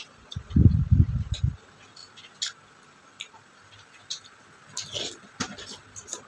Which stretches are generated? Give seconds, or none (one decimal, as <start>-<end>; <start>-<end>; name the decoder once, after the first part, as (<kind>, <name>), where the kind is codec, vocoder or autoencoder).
none